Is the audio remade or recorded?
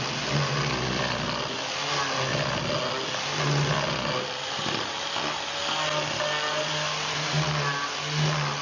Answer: recorded